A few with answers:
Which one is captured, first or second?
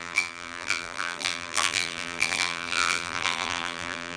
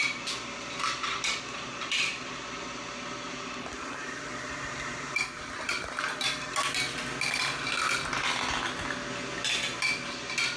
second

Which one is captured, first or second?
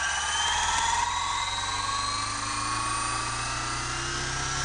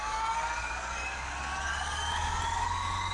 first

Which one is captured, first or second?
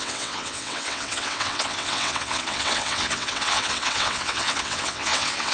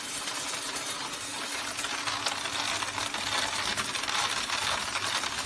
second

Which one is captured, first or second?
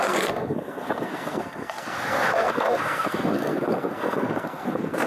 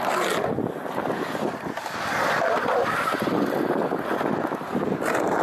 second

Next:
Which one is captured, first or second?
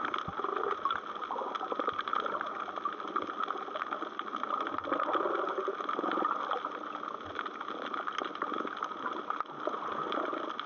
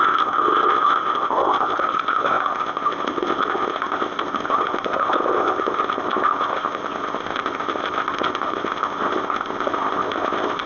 first